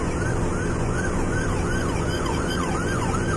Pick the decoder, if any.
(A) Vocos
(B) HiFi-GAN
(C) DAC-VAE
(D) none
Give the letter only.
A